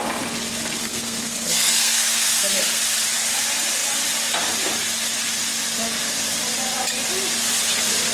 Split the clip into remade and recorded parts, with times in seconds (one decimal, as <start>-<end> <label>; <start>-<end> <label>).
0.0-0.8 recorded; 0.8-2.8 remade; 2.8-8.1 recorded